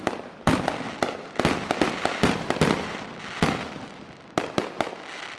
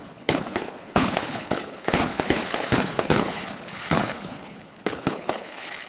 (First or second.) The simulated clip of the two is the second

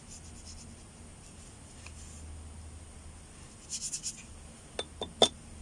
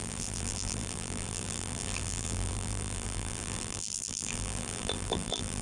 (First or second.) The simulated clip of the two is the second